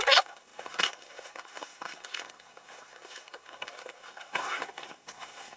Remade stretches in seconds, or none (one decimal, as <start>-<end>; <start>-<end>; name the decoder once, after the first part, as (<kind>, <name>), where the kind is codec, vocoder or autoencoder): 0.0-5.6 (codec, SNAC)